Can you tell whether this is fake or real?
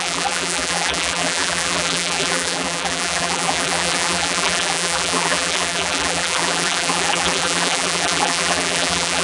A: fake